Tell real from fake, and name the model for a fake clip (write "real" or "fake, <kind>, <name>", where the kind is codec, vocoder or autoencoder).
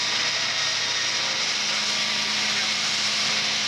real